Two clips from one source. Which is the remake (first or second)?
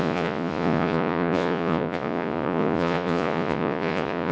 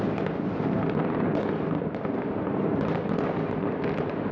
first